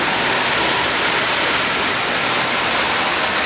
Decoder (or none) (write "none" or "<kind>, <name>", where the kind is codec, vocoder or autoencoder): none